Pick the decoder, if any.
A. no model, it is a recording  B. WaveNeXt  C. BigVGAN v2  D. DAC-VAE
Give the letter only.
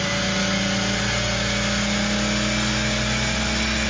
A